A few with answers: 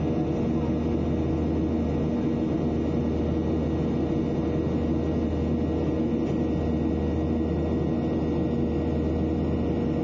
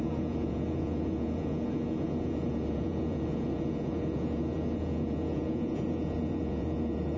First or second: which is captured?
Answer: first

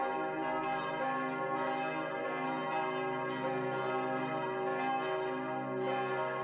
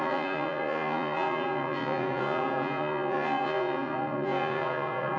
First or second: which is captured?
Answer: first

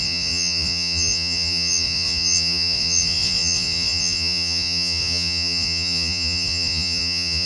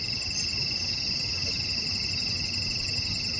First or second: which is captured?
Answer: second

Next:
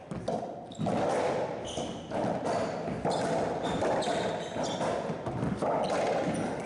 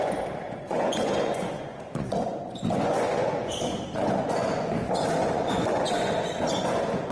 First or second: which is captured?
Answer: first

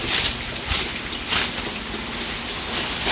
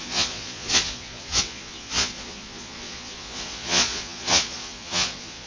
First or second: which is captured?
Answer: first